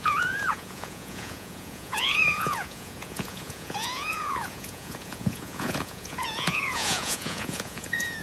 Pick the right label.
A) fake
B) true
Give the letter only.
A